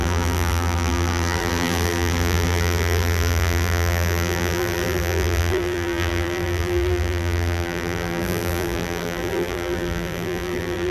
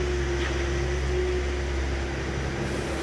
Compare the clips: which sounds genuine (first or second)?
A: second